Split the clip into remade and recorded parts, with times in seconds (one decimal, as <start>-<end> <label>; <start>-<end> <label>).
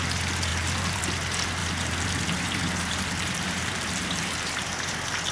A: 0.0-0.5 recorded; 0.5-1.0 remade; 1.0-1.6 recorded; 1.6-4.8 remade; 4.8-5.3 recorded